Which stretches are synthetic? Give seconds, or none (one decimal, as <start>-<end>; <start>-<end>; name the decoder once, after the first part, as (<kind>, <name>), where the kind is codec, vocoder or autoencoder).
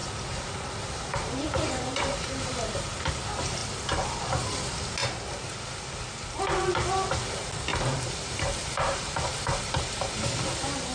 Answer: 0.0-3.1 (vocoder, BigVGAN v2); 7.7-10.1